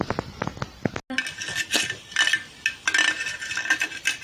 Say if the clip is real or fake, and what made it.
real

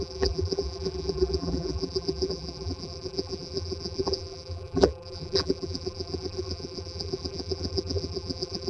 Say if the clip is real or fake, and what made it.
fake, vocoder, BigVGAN v2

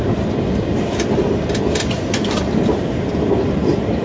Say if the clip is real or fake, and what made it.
real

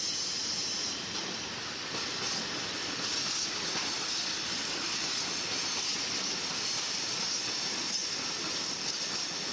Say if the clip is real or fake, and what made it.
real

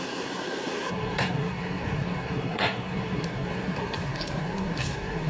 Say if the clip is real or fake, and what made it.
fake, codec, SNAC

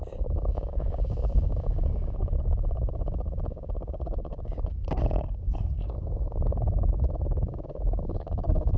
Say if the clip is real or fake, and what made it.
fake, codec, DAC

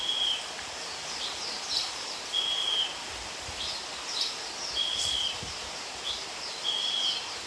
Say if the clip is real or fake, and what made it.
real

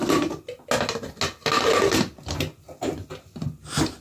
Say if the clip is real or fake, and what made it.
real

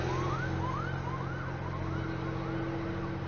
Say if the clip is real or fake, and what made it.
real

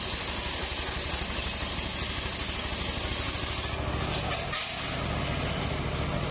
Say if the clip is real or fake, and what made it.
real